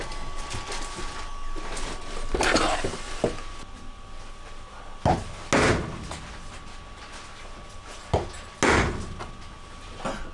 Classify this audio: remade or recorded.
recorded